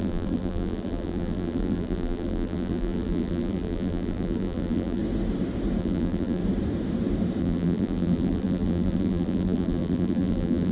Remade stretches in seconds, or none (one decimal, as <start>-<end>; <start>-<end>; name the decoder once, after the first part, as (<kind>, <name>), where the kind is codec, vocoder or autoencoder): 0.0-5.0 (vocoder, BigVGAN v2); 5.8-6.4; 7.4-10.7